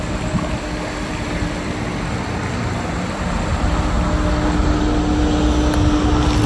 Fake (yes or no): no